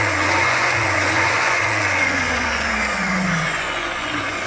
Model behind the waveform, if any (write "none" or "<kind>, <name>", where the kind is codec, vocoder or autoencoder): vocoder, Vocos